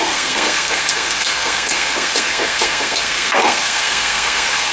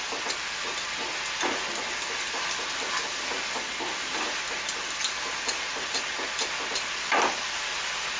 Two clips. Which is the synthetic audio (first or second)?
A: first